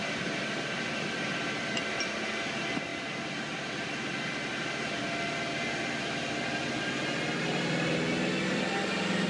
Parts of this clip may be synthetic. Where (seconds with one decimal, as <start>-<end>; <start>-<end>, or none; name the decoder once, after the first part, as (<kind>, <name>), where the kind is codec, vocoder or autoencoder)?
none